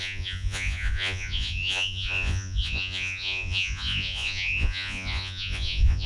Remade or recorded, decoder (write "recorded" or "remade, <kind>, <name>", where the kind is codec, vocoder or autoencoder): remade, vocoder, Vocos